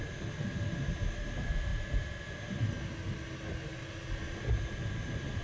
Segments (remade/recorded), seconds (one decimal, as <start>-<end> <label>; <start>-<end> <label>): 0.0-5.4 recorded